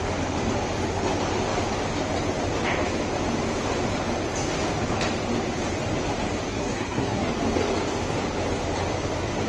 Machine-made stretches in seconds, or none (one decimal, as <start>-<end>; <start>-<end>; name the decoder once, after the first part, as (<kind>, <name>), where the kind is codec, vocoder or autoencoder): 6.5-7.3 (codec, SNAC)